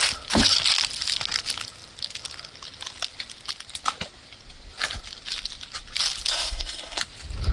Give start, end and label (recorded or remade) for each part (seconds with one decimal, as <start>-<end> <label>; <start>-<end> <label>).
0.0-6.3 recorded; 6.3-7.0 remade; 7.0-7.5 recorded